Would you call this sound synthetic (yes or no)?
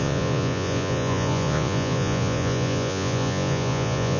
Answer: yes